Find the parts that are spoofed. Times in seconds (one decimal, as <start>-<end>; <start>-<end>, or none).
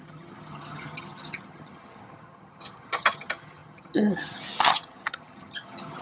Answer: 0.0-6.0